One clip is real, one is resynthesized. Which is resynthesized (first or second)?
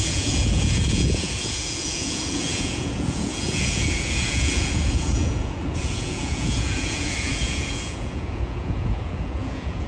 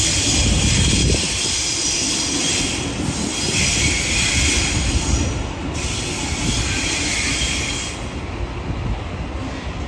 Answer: first